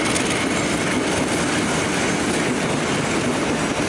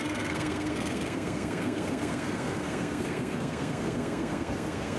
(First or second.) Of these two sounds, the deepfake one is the second